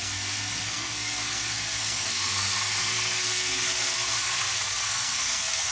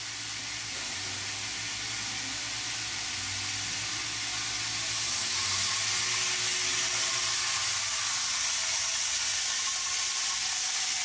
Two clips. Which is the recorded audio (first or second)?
second